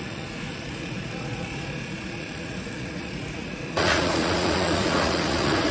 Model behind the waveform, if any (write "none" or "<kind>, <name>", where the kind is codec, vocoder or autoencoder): vocoder, Vocos